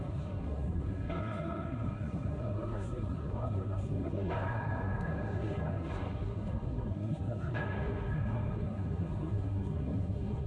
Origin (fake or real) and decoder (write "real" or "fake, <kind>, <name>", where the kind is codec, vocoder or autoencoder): fake, codec, SNAC